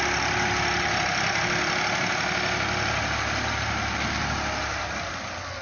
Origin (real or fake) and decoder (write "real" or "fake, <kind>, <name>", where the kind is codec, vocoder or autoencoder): real